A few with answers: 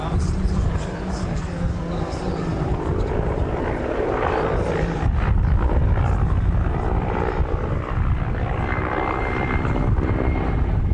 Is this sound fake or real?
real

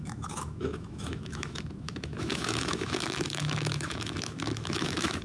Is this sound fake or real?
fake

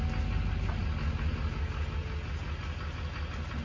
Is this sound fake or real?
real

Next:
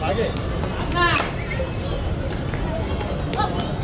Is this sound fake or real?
real